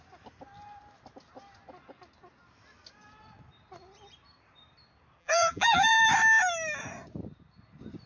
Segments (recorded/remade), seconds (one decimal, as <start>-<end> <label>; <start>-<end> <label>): 0.0-5.2 recorded; 5.2-6.0 remade; 6.0-8.1 recorded